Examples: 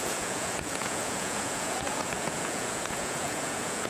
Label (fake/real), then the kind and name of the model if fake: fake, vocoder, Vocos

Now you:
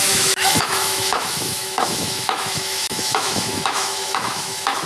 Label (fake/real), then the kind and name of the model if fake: fake, autoencoder, DAC-VAE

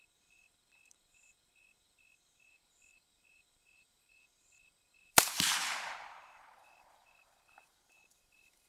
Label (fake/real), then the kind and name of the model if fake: fake, vocoder, BigVGAN v2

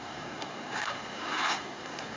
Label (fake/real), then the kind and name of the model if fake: fake, codec, SNAC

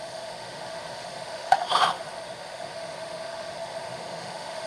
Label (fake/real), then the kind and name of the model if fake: fake, autoencoder, DAC-VAE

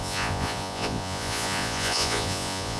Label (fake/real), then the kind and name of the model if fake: fake, vocoder, Vocos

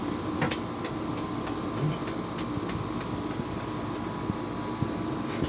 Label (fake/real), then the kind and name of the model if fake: real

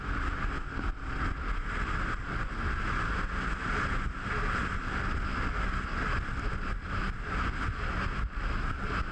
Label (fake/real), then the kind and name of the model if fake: real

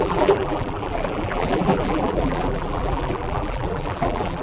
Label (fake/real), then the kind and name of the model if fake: fake, vocoder, BigVGAN v2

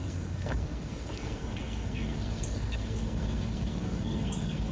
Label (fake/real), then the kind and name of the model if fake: fake, codec, SNAC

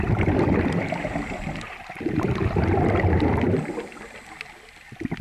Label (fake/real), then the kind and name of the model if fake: fake, vocoder, BigVGAN v2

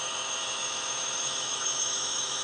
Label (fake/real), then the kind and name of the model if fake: fake, autoencoder, DAC-VAE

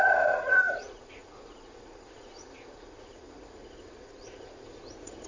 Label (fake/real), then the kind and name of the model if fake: fake, vocoder, Vocos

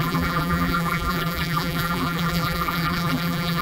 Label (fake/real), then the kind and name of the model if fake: fake, vocoder, BigVGAN v2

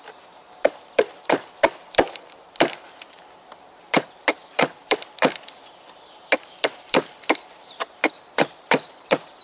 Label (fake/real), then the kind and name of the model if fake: fake, vocoder, BigVGAN v2